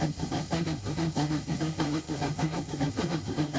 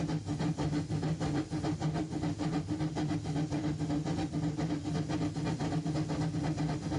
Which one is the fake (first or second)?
first